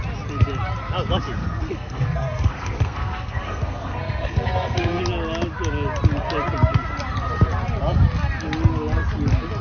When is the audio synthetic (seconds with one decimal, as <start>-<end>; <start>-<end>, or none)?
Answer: 1.4-5.0

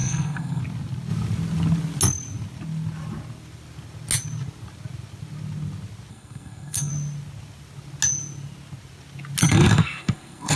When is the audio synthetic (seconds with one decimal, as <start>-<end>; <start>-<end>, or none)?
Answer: 0.0-0.6; 6.1-6.9; 9.4-10.6

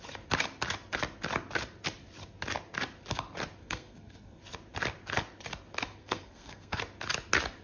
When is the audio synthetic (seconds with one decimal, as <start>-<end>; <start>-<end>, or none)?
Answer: 3.6-4.4; 6.0-6.8

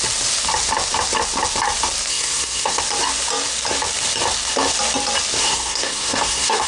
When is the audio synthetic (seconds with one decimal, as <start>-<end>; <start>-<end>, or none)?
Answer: 2.1-2.8; 5.4-6.7

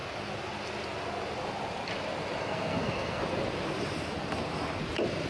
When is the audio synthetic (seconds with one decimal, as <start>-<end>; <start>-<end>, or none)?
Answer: 2.4-3.2

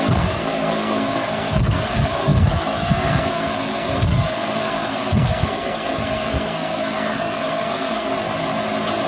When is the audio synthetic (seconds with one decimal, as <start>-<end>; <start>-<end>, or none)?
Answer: 0.0-8.1

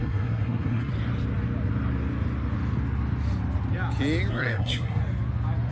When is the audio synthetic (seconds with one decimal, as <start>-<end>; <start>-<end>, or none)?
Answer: 0.0-0.9; 4.3-5.0